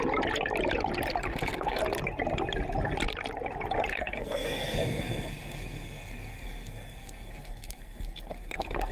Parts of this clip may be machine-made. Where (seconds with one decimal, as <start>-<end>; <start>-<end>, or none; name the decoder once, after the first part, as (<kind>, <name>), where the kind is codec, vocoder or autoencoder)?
1.3-1.8 (codec, SNAC); 3.9-8.9